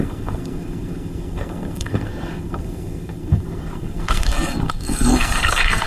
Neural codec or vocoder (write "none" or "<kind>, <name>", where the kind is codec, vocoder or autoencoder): codec, SNAC